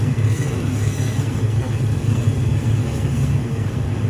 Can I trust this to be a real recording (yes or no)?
no